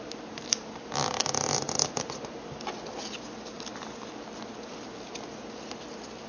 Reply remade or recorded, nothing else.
recorded